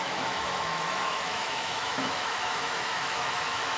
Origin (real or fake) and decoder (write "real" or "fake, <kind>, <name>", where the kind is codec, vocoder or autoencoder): fake, autoencoder, DAC-VAE